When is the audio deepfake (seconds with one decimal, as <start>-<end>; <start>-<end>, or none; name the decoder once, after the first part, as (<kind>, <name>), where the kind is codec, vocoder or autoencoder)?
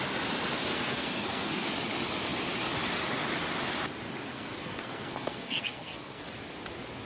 0.7-1.7 (codec, SNAC); 4.3-6.2